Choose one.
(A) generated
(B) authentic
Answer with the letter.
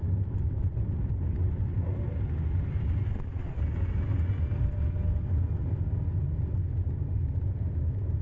B